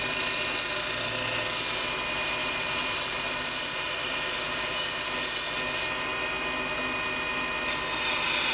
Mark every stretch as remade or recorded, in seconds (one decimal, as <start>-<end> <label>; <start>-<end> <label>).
0.0-2.4 recorded; 2.4-4.7 remade; 4.7-8.5 recorded

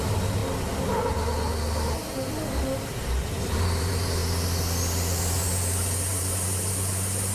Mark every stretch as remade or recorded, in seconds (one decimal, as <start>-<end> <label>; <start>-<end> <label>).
0.0-0.4 remade; 0.4-3.4 recorded; 3.4-4.2 remade; 4.2-5.2 recorded; 5.2-7.3 remade

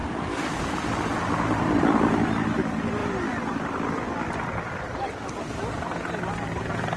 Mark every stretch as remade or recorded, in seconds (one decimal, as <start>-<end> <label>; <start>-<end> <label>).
0.0-0.6 remade; 0.6-1.1 recorded; 1.1-1.8 remade; 1.8-3.0 recorded; 3.0-6.3 remade; 6.3-7.0 recorded

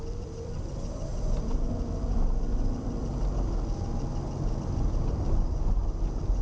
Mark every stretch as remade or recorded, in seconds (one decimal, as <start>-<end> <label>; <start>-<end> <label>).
0.0-1.1 remade; 1.1-4.6 recorded; 4.6-5.8 remade; 5.8-6.4 recorded

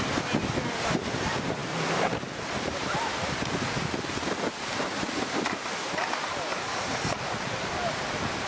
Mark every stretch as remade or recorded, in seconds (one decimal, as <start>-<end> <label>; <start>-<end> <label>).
0.0-1.6 recorded; 1.6-3.9 remade; 3.9-4.9 recorded; 4.9-5.6 remade; 5.6-6.5 recorded; 6.5-7.1 remade; 7.1-8.5 recorded

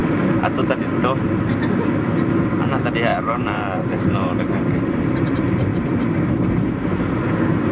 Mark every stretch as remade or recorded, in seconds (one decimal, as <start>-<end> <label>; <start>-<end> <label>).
0.0-0.7 remade; 0.7-3.1 recorded; 3.1-5.9 remade; 5.9-7.7 recorded

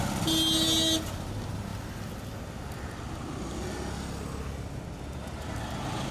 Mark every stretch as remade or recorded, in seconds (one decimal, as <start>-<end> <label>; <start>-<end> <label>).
0.0-6.1 recorded

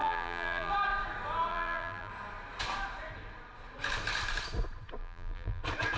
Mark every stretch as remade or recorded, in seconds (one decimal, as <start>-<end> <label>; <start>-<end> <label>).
0.0-0.7 remade; 0.7-1.5 recorded; 1.5-2.1 remade; 2.1-5.0 recorded; 5.0-5.6 remade; 5.6-6.0 recorded